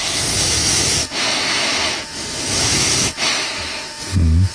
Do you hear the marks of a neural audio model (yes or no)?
yes